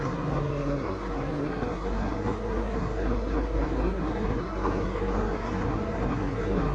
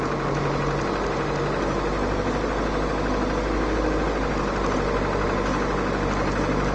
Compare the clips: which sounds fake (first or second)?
first